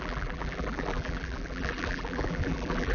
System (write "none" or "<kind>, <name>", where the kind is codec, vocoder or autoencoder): vocoder, BigVGAN v2